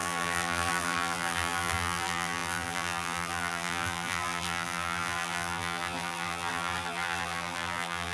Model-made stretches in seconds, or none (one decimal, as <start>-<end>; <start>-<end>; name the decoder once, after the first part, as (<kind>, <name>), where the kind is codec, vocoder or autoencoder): 0.0-8.1 (vocoder, BigVGAN v2)